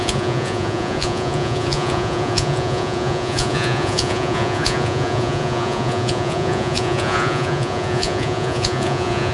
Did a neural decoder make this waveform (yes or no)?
yes